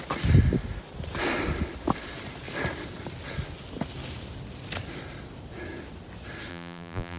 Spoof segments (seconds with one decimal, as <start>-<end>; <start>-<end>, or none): 6.5-7.2